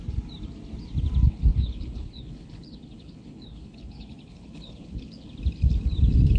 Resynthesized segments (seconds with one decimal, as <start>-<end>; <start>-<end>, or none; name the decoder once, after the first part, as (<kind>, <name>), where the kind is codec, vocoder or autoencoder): 1.5-5.3 (codec, HILCodec)